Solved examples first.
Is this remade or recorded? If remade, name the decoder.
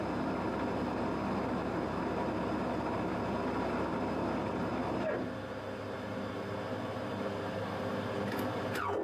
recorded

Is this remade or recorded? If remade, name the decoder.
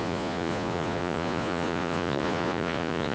remade, vocoder, Vocos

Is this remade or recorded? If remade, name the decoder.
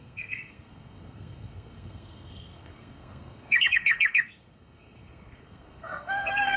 remade, codec, SNAC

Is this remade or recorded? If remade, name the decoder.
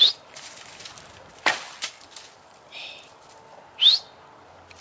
recorded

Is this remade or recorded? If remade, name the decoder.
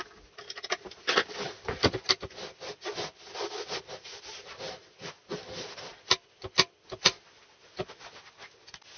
recorded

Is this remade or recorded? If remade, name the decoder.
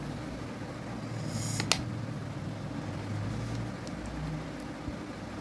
recorded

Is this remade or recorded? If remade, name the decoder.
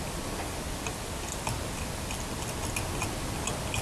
recorded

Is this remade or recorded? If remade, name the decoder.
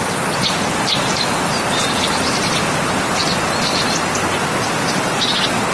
recorded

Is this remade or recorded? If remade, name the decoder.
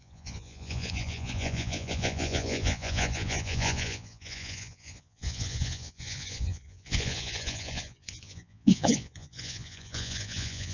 remade, vocoder, Vocos